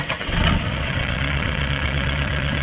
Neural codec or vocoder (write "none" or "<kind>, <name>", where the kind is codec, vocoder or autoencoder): vocoder, WaveNeXt